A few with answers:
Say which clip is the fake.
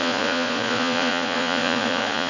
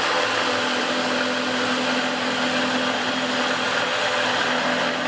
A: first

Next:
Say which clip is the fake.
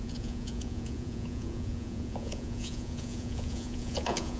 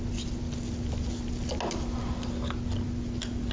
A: first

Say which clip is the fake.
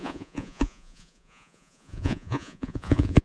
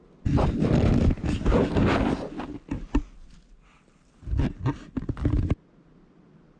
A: first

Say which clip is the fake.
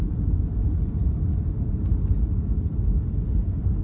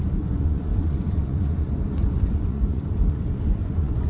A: second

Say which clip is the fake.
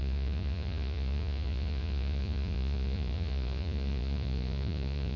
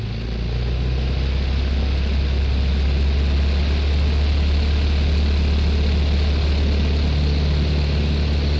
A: first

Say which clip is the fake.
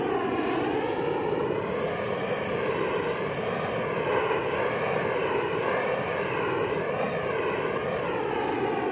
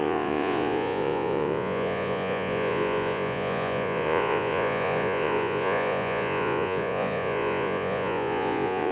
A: second